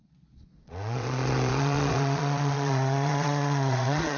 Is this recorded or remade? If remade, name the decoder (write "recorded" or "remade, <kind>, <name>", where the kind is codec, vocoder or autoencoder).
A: remade, vocoder, Vocos